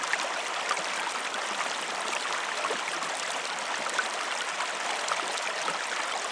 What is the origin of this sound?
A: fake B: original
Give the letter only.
B